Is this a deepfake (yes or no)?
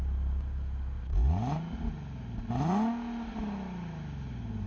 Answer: no